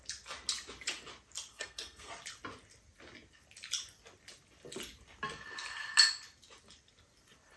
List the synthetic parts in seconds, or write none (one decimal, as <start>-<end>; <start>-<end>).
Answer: 1.5-2.1